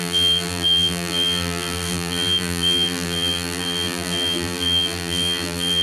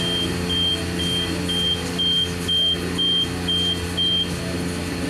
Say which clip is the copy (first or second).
first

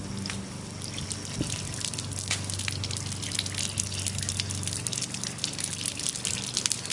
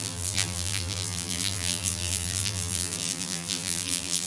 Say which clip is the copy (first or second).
second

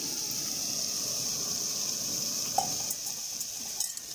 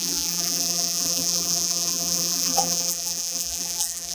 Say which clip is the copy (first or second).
second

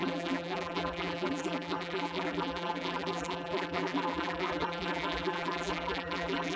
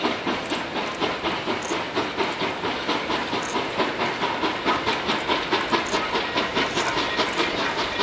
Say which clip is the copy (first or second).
first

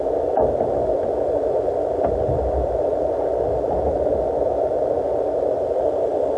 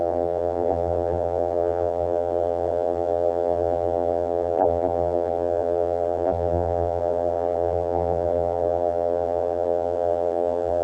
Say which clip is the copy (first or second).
second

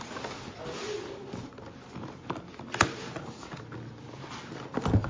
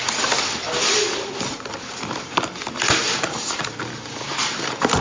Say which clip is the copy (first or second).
second